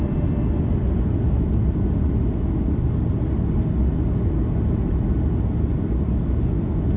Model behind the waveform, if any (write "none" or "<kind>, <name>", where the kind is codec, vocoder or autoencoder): none